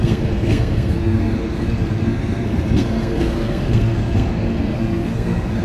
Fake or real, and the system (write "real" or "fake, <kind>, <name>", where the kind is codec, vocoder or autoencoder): fake, codec, SNAC